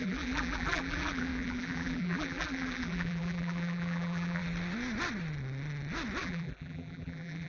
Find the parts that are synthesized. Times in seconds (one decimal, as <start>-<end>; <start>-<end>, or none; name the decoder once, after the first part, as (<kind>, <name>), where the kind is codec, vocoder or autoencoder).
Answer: 0.0-4.4 (vocoder, BigVGAN v2); 6.2-7.5